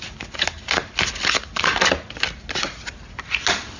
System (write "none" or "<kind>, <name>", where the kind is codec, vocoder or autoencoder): none